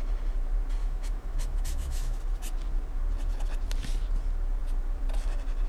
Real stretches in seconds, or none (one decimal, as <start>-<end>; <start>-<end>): 0.0-0.8; 2.2-5.7